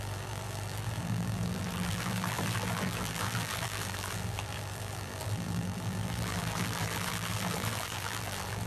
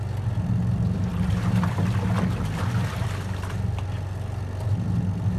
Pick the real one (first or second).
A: second